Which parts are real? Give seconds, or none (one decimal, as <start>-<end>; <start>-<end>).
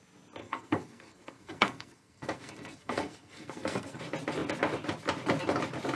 0.0-0.4; 4.0-6.0